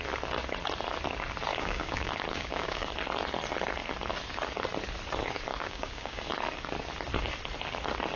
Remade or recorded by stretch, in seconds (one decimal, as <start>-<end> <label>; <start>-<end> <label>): 0.0-1.5 recorded; 1.5-2.9 remade; 2.9-5.5 recorded; 5.5-6.3 remade; 6.3-8.2 recorded